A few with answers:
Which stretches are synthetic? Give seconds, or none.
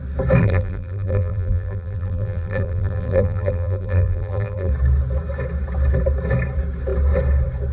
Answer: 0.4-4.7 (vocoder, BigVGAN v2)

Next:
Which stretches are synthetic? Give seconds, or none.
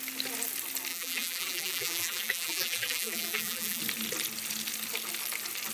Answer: 0.9-3.8 (vocoder, BigVGAN v2)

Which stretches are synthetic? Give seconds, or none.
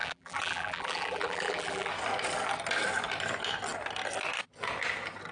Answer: 0.0-1.9 (vocoder, BigVGAN v2)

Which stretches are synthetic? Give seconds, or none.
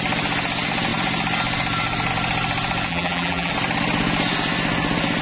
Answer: 2.9-3.5 (vocoder, BigVGAN v2)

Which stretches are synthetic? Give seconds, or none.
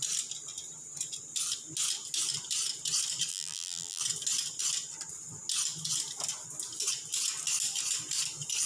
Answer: 3.3-4.0 (vocoder, BigVGAN v2)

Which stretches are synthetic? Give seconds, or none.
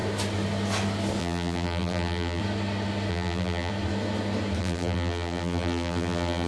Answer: 1.2-2.4 (vocoder, BigVGAN v2); 3.1-3.7; 4.6-6.5